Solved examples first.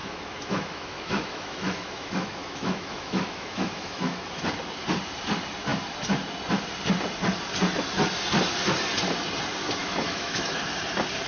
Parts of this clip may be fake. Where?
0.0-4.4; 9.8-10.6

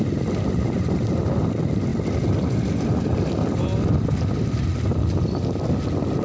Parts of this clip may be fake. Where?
none

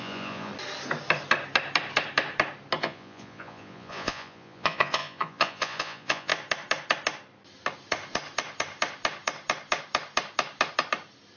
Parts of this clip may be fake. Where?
0.0-0.5; 2.8-6.3

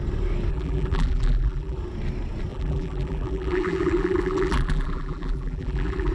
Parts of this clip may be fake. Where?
0.5-1.8; 2.5-6.1

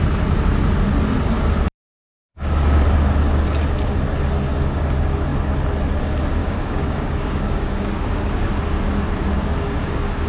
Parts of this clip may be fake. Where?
2.2-2.8; 6.4-8.5; 9.3-10.3

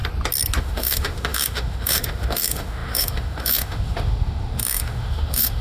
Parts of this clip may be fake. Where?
0.6-5.6